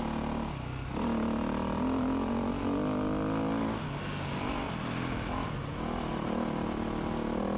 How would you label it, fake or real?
real